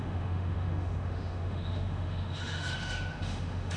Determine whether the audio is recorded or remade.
remade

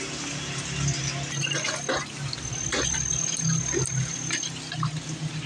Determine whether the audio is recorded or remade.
recorded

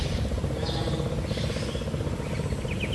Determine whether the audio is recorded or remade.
recorded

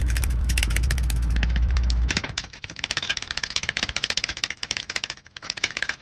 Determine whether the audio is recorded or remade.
remade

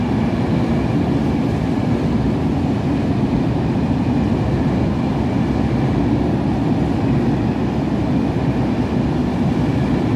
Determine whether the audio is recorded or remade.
recorded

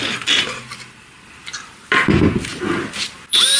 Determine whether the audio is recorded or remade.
recorded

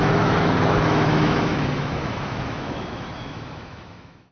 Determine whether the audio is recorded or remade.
remade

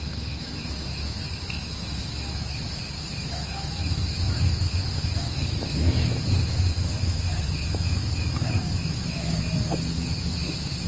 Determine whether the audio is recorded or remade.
remade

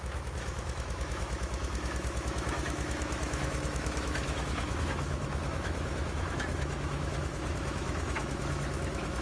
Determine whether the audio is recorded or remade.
remade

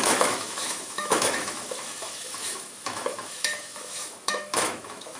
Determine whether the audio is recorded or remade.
remade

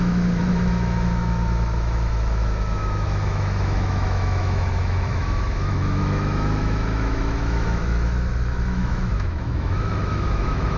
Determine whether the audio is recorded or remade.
remade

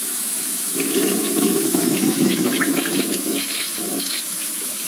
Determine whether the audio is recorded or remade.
remade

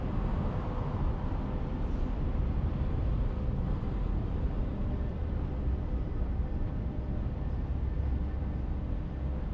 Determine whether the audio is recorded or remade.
recorded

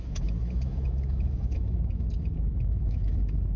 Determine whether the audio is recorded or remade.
remade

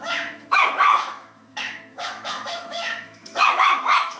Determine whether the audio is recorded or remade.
remade